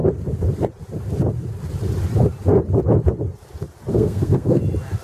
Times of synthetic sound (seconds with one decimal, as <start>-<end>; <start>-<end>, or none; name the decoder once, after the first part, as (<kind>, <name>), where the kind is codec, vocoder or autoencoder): 3.9-4.6 (codec, SNAC)